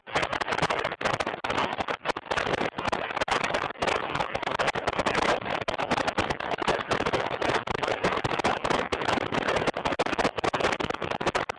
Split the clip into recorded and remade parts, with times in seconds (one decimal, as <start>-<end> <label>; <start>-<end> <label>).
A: 0.0-8.3 recorded; 8.3-9.2 remade; 9.2-11.6 recorded